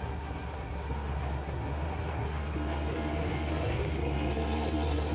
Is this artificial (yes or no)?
yes